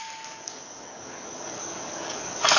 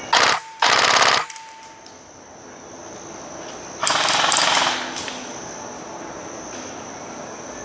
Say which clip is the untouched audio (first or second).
second